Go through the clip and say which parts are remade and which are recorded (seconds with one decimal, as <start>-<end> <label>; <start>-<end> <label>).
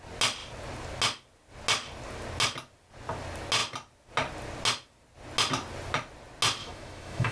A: 0.0-6.6 recorded; 6.6-7.3 remade